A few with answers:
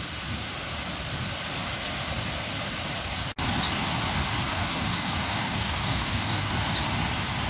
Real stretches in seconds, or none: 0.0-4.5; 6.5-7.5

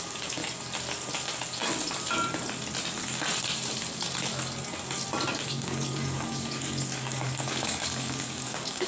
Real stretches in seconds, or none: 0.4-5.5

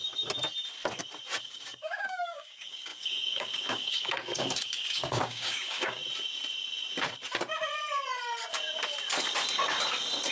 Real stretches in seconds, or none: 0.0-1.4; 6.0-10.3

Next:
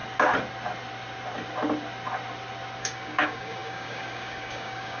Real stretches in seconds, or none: 0.0-2.8

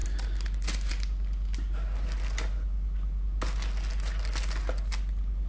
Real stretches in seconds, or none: 0.0-5.5

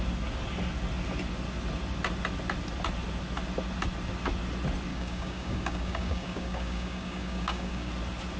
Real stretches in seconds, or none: 0.0-4.9; 7.9-8.4